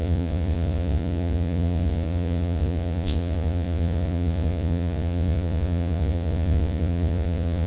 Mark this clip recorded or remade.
remade